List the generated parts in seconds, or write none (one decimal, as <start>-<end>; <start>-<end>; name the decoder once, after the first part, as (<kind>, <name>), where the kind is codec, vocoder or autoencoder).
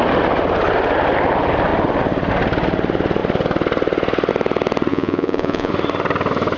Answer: 4.9-5.7 (vocoder, Vocos)